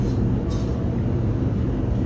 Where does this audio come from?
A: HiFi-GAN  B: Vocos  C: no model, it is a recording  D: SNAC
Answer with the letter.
C